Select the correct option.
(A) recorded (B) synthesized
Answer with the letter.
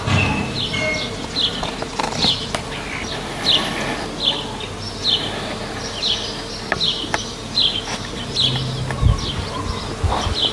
A